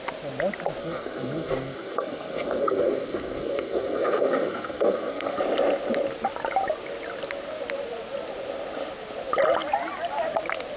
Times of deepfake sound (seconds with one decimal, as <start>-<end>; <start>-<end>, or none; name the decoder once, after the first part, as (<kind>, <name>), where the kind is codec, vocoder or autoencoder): 0.8-5.4 (codec, SNAC)